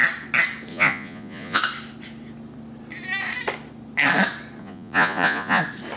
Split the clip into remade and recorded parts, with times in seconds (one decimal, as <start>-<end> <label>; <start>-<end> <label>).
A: 0.0-0.7 recorded; 0.7-1.6 remade; 1.6-4.6 recorded; 4.6-5.6 remade; 5.6-6.0 recorded